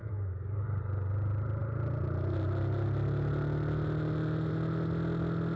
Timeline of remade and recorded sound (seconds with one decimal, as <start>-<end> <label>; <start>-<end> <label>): 0.0-0.8 remade; 0.8-5.6 recorded

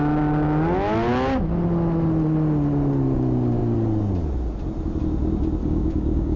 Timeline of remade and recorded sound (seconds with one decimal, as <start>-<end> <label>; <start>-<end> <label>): 0.0-5.6 recorded; 5.6-6.4 remade

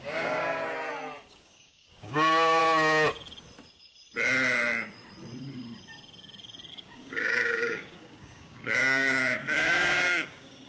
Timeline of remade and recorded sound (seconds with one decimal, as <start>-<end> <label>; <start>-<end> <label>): 0.0-0.6 remade; 0.6-1.3 recorded; 1.3-2.6 remade; 2.6-6.7 recorded; 6.7-10.7 remade

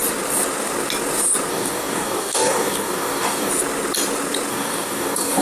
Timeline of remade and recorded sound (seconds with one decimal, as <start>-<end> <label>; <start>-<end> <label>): 0.0-1.5 recorded; 1.5-3.5 remade; 3.5-4.5 recorded; 4.5-5.4 remade

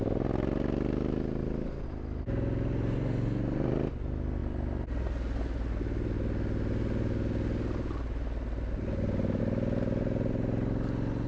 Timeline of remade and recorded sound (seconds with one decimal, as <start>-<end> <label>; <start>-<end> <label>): 0.0-11.3 recorded

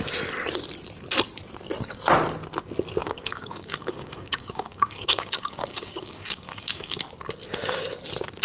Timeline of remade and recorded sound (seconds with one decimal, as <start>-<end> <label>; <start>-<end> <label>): 0.0-3.0 recorded; 3.0-7.0 remade; 7.0-8.4 recorded

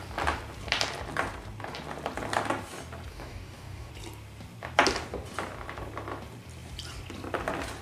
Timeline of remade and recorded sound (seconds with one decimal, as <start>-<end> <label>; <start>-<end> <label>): 0.0-3.1 recorded; 3.1-3.9 remade; 3.9-7.8 recorded